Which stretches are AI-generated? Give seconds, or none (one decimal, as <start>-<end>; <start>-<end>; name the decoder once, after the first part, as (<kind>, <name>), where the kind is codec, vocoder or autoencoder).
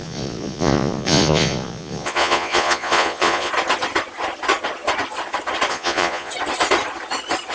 0.0-3.5 (vocoder, Vocos); 5.7-6.3